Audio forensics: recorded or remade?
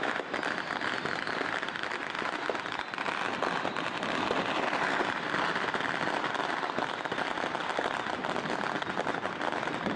remade